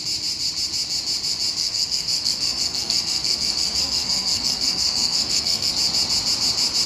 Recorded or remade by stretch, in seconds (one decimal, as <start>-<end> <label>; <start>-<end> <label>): 0.0-1.6 recorded; 1.6-5.7 remade; 5.7-6.9 recorded